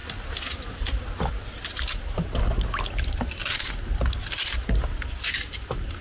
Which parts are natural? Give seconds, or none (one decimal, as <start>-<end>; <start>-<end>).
0.0-6.0